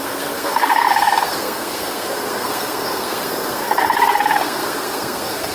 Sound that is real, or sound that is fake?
fake